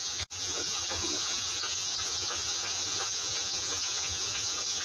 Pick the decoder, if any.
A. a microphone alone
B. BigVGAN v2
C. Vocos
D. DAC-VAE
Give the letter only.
C